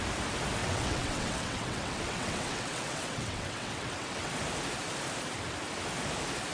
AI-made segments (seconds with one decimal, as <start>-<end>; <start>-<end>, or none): 0.6-4.3